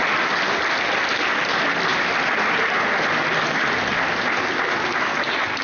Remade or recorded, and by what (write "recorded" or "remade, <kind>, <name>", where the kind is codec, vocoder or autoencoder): recorded